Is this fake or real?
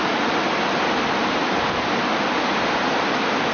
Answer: real